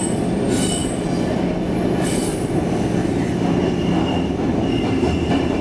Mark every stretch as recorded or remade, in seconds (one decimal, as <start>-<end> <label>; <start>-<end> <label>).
0.0-4.5 recorded; 4.5-5.6 remade